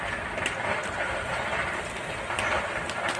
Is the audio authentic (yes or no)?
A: yes